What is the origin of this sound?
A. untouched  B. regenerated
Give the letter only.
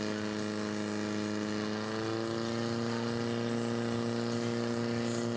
A